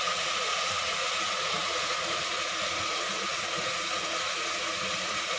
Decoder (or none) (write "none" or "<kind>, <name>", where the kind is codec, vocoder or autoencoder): vocoder, Vocos